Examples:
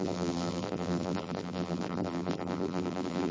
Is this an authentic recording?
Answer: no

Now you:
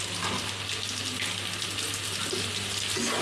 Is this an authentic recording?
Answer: yes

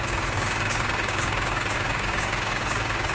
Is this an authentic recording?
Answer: no